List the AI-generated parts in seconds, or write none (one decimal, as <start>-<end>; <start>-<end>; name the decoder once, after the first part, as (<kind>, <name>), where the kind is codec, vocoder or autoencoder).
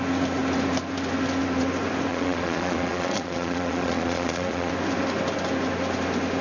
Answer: 2.1-4.7 (vocoder, Vocos)